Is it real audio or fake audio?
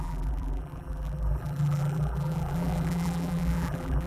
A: fake